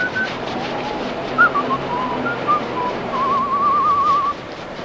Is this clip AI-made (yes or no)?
yes